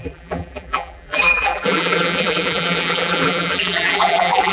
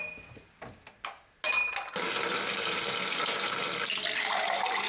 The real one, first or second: second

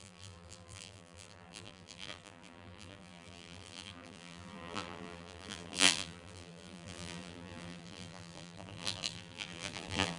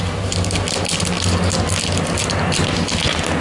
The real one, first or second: second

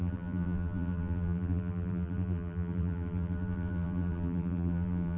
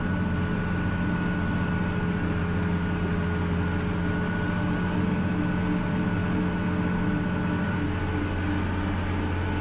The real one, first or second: second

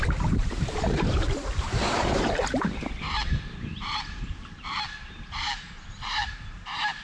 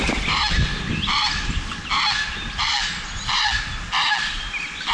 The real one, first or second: second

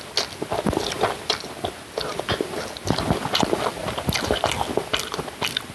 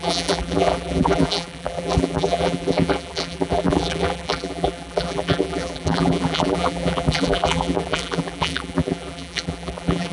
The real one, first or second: first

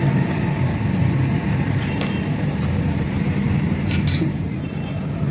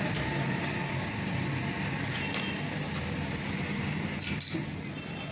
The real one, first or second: second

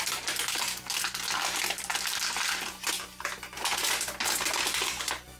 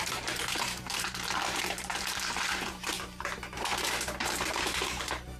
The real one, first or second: first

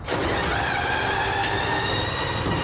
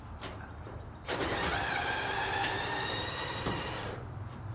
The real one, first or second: first